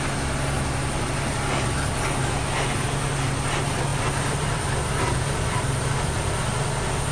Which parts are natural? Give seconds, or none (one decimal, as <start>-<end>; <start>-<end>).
0.0-3.9; 6.4-7.1